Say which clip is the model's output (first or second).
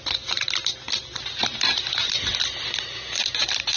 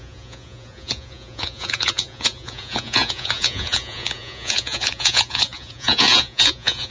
second